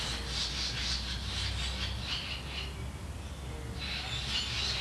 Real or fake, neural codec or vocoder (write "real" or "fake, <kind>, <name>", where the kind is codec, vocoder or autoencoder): real